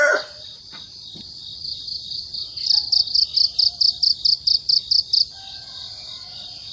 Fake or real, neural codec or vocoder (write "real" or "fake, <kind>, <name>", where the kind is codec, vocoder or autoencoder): real